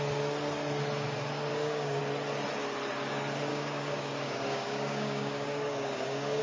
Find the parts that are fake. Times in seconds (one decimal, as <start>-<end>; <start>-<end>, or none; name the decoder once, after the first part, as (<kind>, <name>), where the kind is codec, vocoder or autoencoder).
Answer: 1.5-2.0 (codec, DAC); 3.5-6.4